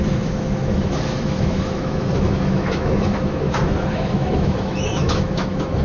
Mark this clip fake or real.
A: fake